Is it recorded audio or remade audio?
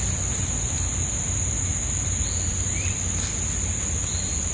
recorded